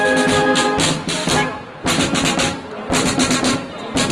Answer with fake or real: real